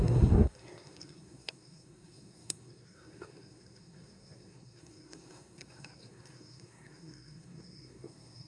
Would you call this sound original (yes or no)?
no